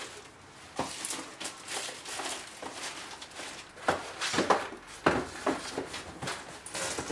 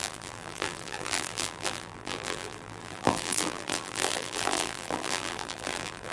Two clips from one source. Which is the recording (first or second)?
first